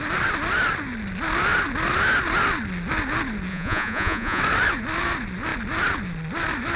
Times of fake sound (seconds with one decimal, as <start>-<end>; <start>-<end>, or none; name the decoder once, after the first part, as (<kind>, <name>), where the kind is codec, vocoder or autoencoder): 3.5-4.4 (vocoder, Vocos)